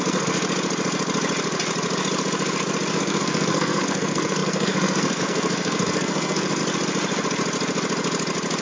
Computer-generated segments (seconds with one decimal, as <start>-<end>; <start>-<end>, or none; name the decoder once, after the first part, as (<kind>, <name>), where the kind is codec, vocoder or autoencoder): 0.0-0.4 (codec, SNAC); 2.9-6.6